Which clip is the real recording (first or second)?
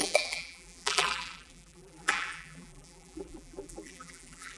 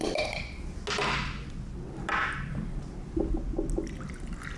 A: second